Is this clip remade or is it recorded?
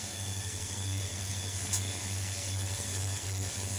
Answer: remade